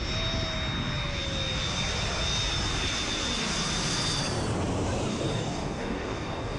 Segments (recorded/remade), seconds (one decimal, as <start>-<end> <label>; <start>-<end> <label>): 0.0-5.1 recorded; 5.1-6.6 remade